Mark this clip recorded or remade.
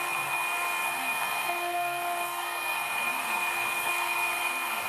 remade